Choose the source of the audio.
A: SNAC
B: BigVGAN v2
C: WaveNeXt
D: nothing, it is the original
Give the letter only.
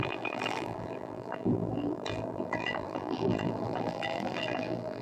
B